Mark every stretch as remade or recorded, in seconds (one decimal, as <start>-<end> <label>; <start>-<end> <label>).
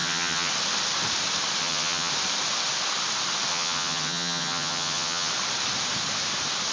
0.0-0.5 remade; 0.5-1.6 recorded; 1.6-2.1 remade; 2.1-3.5 recorded; 3.5-5.3 remade; 5.3-6.7 recorded